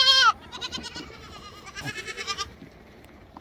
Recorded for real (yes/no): no